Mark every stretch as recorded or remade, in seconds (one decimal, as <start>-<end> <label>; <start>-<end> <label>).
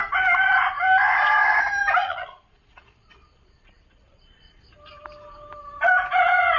0.0-2.0 recorded; 2.0-4.6 remade; 4.6-6.6 recorded